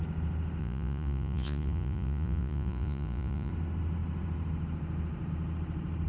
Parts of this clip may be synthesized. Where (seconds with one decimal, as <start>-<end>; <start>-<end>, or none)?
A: 0.6-3.5